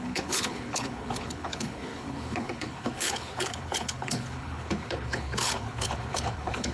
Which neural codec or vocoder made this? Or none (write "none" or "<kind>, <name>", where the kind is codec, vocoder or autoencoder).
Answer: codec, HILCodec